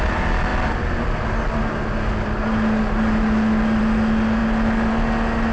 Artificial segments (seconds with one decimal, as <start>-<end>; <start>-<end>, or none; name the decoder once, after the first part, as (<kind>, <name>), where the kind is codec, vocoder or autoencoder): none